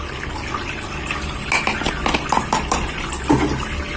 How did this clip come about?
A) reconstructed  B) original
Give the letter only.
B